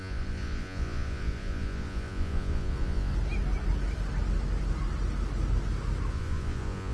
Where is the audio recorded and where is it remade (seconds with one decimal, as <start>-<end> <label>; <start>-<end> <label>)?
0.0-3.1 remade; 3.1-6.1 recorded; 6.1-6.9 remade